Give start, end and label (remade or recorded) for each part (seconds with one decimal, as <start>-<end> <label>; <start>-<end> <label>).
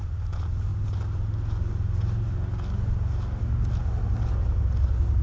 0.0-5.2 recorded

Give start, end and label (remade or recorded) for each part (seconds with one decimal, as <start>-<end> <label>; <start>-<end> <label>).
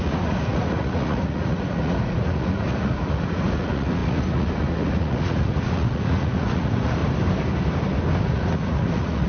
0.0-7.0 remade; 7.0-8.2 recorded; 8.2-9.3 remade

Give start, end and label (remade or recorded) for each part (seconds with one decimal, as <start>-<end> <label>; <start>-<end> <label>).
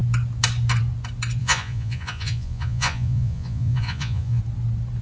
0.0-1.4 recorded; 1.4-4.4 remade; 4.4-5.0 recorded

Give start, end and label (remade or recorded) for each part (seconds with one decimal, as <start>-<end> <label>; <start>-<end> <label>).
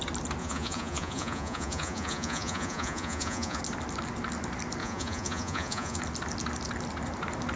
0.0-0.4 recorded; 0.4-3.6 remade; 3.6-4.8 recorded; 4.8-6.0 remade; 6.0-7.6 recorded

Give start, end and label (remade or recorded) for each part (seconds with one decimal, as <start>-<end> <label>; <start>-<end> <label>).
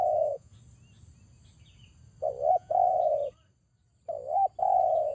0.0-0.5 remade; 0.5-2.5 recorded; 2.5-3.2 remade; 3.2-4.6 recorded; 4.6-5.1 remade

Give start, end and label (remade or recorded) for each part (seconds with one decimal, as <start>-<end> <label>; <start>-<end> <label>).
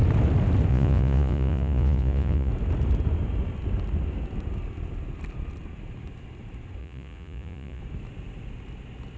0.0-0.7 recorded; 0.7-2.5 remade; 2.5-6.8 recorded; 6.8-7.8 remade; 7.8-9.2 recorded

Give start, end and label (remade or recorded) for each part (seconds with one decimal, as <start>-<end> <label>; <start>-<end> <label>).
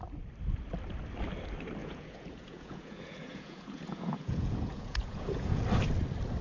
0.0-1.8 recorded; 1.8-5.6 remade; 5.6-6.4 recorded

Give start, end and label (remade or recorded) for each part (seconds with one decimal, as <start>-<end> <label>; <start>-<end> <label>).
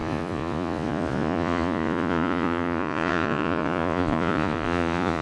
0.0-5.2 remade